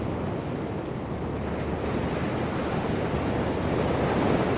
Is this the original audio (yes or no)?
yes